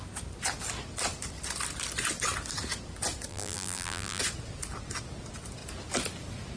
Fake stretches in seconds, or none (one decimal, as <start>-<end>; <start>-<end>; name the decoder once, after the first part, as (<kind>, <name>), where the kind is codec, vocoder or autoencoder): 3.3-4.2 (vocoder, BigVGAN v2)